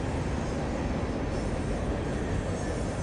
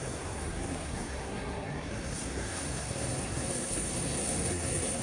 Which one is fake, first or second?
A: second